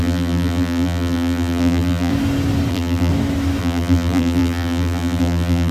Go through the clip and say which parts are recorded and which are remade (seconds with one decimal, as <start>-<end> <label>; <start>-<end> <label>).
0.0-2.1 remade; 2.1-2.7 recorded; 2.7-3.1 remade; 3.1-3.6 recorded; 3.6-5.7 remade